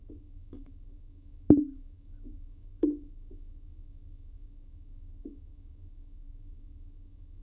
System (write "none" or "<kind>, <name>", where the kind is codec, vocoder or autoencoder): codec, DAC